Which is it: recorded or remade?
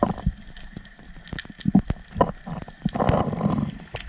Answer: recorded